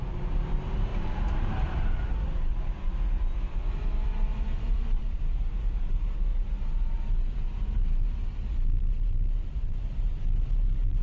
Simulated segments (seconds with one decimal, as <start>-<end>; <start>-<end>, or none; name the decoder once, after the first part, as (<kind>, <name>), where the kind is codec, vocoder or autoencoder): 0.0-6.3 (vocoder, BigVGAN v2); 7.3-11.0